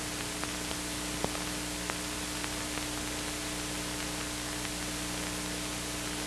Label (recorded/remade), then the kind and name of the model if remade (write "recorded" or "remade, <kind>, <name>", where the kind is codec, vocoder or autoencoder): recorded